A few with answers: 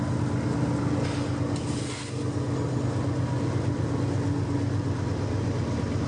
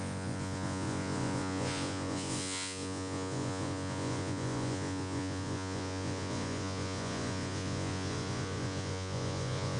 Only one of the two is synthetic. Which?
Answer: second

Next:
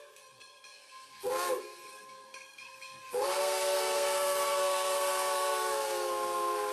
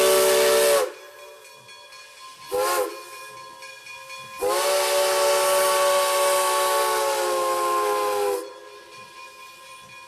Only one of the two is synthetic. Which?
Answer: first